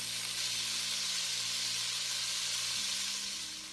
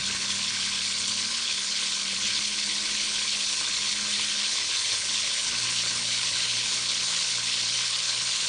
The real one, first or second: first